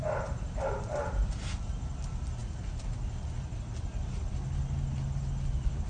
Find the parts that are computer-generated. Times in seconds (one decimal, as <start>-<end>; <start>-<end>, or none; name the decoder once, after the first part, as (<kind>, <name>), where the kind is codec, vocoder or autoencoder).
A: none